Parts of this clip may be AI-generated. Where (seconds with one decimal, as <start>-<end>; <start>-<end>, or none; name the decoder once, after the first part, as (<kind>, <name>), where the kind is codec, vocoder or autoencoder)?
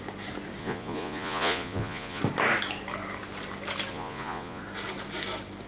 0.6-2.2 (vocoder, Vocos); 3.9-4.6